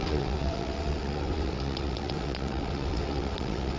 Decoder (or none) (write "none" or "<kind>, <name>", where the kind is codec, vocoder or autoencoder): vocoder, WaveNeXt